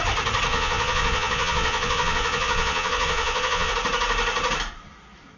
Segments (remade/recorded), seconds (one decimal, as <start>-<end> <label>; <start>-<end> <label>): 0.0-0.5 recorded; 0.5-3.7 remade; 3.7-5.4 recorded